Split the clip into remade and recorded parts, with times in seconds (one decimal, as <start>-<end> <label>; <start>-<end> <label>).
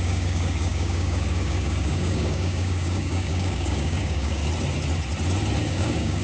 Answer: 0.0-4.4 remade; 4.4-5.6 recorded; 5.6-6.2 remade